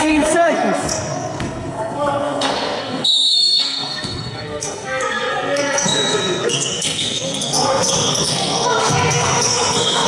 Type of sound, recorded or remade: remade